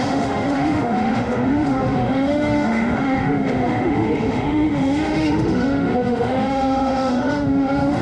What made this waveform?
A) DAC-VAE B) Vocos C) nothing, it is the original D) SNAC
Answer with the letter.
A